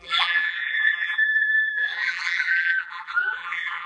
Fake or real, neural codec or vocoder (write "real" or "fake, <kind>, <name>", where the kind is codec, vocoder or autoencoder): fake, vocoder, BigVGAN v2